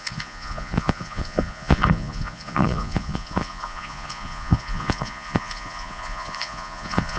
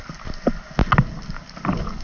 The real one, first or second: second